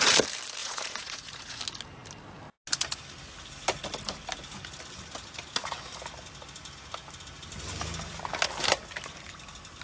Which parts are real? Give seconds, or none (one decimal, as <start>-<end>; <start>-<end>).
0.0-0.6; 1.6-9.8